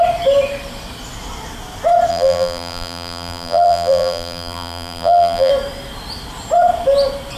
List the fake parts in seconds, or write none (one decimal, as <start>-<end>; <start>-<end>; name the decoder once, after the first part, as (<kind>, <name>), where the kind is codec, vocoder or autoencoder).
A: 2.1-5.5 (vocoder, BigVGAN v2)